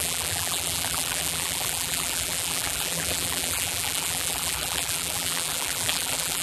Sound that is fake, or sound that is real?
fake